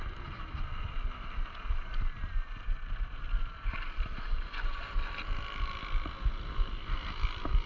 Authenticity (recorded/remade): recorded